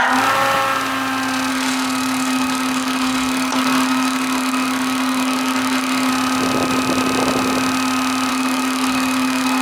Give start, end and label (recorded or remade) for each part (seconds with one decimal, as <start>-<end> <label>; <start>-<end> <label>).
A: 0.0-1.5 recorded; 1.5-6.1 remade; 6.1-8.3 recorded; 8.3-9.6 remade